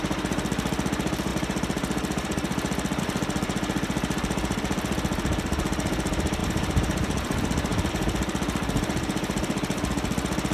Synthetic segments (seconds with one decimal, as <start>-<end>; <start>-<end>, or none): 6.4-7.9